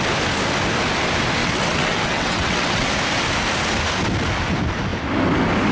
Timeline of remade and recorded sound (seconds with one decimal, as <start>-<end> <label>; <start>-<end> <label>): 0.0-1.4 recorded; 1.4-2.9 remade; 2.9-5.7 recorded